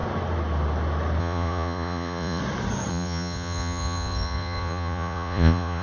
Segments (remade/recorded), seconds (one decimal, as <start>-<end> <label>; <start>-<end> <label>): 0.0-1.2 recorded; 1.2-2.4 remade; 2.4-2.9 recorded; 2.9-5.8 remade

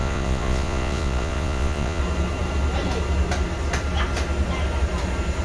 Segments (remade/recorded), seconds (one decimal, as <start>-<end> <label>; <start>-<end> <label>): 0.0-2.0 remade; 2.0-5.4 recorded

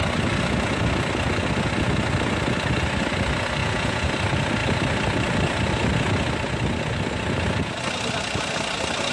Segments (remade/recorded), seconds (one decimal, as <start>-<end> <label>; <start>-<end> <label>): 0.0-3.6 recorded; 3.6-4.1 remade; 4.1-9.1 recorded

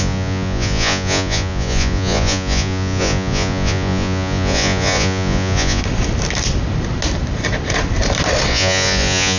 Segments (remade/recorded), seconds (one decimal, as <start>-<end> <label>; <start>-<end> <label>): 0.0-5.8 remade; 5.8-8.5 recorded; 8.5-9.4 remade

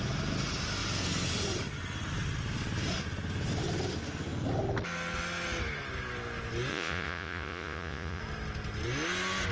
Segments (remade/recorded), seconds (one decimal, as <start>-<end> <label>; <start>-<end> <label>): 0.0-6.7 recorded; 6.7-8.2 remade; 8.2-9.5 recorded

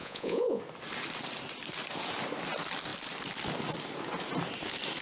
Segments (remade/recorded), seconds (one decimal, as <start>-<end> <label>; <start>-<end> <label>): 0.0-0.6 remade; 0.6-5.0 recorded